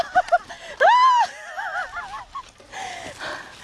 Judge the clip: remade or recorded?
recorded